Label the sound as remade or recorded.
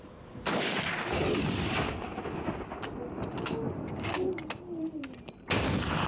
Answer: recorded